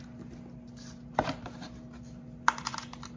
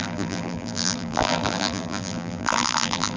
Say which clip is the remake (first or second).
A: second